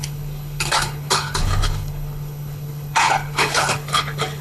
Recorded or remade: remade